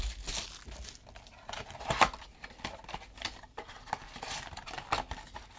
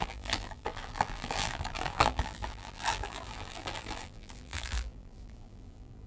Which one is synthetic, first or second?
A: second